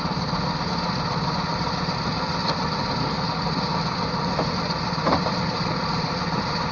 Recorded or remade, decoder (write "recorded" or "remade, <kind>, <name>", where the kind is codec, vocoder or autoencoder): remade, vocoder, BigVGAN v2